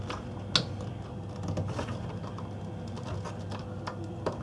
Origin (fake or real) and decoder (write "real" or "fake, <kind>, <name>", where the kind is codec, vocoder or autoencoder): real